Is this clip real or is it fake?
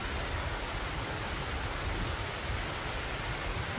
real